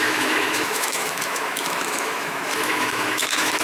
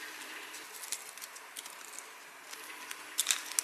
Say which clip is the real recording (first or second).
second